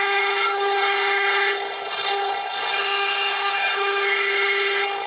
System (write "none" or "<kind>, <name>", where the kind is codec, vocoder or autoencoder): codec, HILCodec